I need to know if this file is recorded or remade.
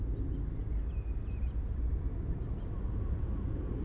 recorded